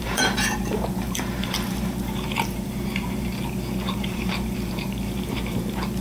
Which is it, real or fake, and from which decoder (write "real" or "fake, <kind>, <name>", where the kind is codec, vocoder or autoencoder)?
fake, vocoder, BigVGAN v2